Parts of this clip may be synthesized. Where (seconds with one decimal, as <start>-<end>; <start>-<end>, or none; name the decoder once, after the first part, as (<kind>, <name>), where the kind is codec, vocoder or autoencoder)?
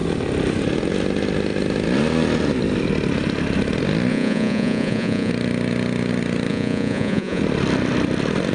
4.1-5.3 (vocoder, Vocos); 6.5-7.4